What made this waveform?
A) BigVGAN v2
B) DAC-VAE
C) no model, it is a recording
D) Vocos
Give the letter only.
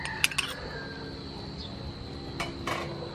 C